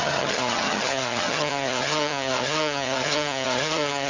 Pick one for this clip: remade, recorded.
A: remade